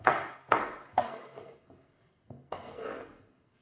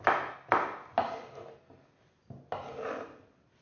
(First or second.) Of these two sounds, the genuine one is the second